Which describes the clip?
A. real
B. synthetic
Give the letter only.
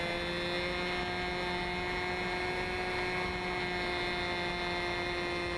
A